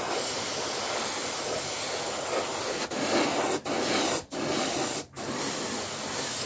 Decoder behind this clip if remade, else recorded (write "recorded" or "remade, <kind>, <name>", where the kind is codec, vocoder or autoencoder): recorded